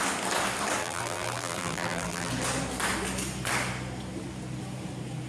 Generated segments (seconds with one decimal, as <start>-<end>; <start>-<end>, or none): 0.8-2.3